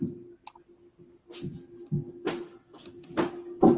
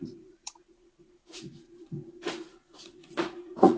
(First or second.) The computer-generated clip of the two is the second